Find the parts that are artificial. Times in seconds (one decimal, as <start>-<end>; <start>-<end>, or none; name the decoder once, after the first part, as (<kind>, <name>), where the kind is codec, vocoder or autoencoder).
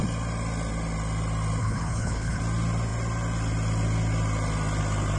1.6-2.4 (codec, HILCodec)